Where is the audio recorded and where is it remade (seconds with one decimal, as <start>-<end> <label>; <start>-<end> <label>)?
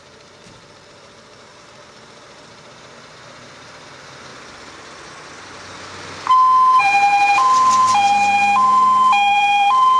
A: 0.0-4.3 remade; 4.3-6.8 recorded; 6.8-8.4 remade; 8.4-9.3 recorded; 9.3-10.0 remade